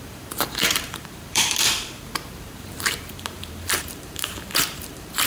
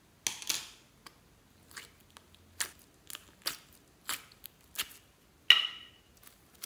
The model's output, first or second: first